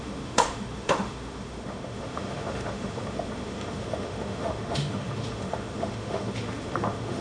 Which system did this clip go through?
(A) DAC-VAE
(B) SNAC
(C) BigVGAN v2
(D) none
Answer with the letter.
A